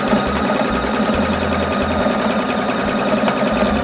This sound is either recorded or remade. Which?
recorded